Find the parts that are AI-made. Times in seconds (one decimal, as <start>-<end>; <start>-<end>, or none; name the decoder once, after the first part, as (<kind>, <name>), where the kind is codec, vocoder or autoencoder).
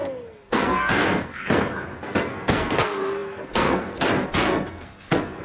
0.0-5.4 (codec, SNAC)